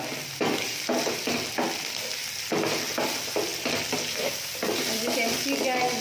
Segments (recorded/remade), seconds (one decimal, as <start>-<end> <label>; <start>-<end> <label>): 0.0-3.5 recorded; 3.5-4.3 remade; 4.3-6.0 recorded